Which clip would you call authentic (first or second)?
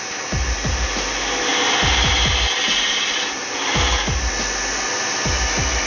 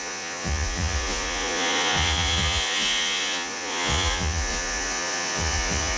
first